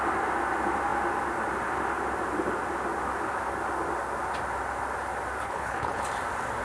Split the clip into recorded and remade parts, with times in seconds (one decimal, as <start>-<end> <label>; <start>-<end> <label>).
0.0-5.4 recorded; 5.4-6.0 remade; 6.0-6.6 recorded